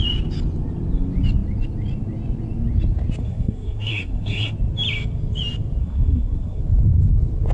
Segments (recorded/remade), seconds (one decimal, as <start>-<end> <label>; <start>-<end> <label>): 0.0-3.2 recorded; 3.2-4.5 remade; 4.5-5.8 recorded; 5.8-6.6 remade; 6.6-7.5 recorded